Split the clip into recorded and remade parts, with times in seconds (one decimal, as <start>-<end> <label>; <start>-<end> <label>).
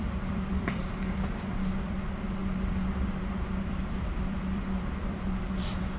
0.0-2.4 remade; 2.4-3.6 recorded; 3.6-6.0 remade